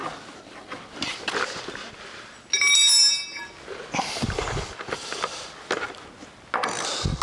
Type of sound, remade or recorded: recorded